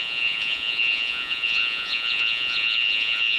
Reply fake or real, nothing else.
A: fake